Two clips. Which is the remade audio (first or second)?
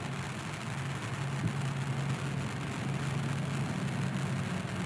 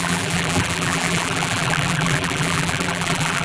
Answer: second